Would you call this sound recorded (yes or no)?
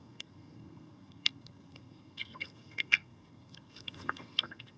no